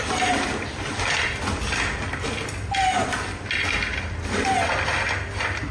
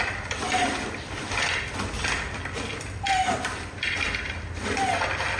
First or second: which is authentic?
first